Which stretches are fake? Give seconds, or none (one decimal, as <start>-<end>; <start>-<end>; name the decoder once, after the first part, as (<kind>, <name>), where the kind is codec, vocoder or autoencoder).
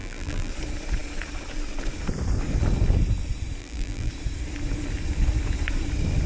0.0-0.5 (vocoder, BigVGAN v2); 3.6-4.1